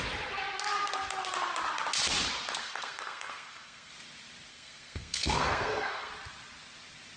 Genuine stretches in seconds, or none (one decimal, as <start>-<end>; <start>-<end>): 0.0-2.6; 3.9-4.5; 6.1-7.2